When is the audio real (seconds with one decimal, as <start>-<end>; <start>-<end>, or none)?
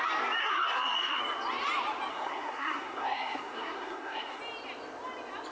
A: 0.0-0.4; 1.2-2.1; 4.4-5.5